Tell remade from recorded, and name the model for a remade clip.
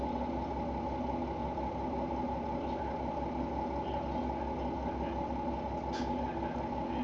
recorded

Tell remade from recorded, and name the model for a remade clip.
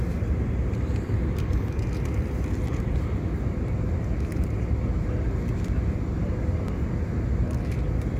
recorded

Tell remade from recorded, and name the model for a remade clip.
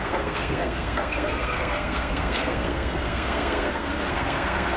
remade, codec, SNAC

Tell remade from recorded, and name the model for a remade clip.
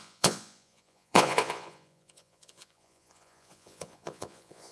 remade, vocoder, Vocos